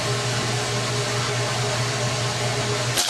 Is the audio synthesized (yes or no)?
no